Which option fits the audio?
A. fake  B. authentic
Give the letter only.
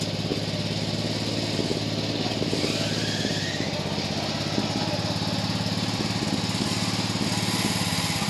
B